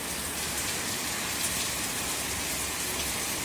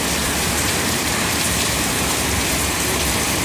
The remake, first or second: second